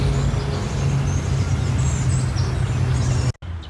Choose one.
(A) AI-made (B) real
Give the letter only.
B